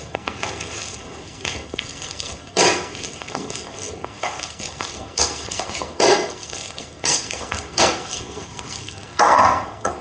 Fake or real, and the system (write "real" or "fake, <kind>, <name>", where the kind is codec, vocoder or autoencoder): fake, codec, SNAC